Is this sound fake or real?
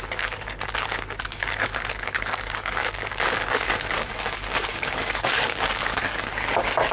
fake